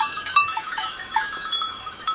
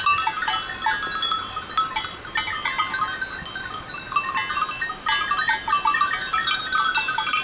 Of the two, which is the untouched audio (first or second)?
second